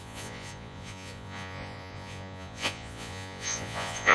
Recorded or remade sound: remade